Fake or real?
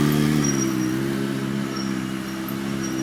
real